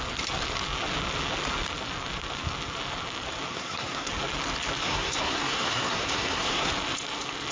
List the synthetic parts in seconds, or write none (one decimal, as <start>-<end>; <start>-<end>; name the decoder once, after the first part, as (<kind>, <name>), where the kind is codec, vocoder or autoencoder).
3.5-4.1 (codec, SNAC); 4.8-6.7